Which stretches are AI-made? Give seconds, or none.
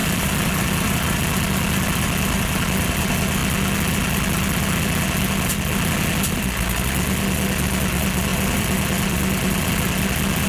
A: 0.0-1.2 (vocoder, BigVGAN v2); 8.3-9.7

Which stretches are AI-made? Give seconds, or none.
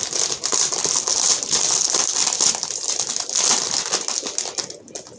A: 0.8-3.1 (vocoder, BigVGAN v2)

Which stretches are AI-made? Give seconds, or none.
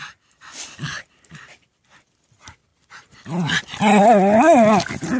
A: none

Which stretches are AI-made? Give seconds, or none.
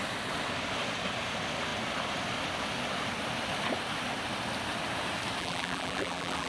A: 5.4-6.5 (vocoder, BigVGAN v2)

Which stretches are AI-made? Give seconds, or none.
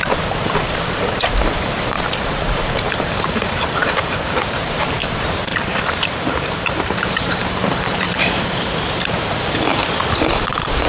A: 0.0-9.8 (vocoder, BigVGAN v2); 10.3-10.9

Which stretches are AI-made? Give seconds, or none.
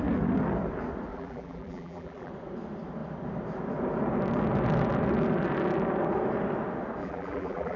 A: 1.1-2.3 (vocoder, BigVGAN v2); 7.0-7.8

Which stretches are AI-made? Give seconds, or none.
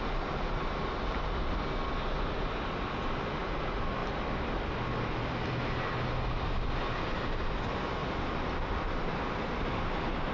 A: 8.0-9.2 (vocoder, BigVGAN v2)